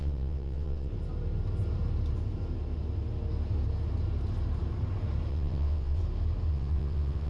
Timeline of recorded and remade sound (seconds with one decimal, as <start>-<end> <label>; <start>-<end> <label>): 0.0-0.9 remade; 0.9-5.3 recorded; 5.3-6.0 remade; 6.0-6.5 recorded; 6.5-7.3 remade